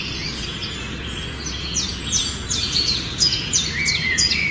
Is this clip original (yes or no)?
no